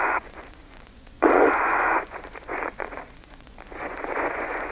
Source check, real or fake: fake